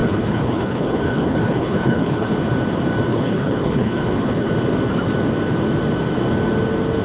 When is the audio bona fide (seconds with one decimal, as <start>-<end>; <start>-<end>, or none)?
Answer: 2.3-3.1; 4.5-7.0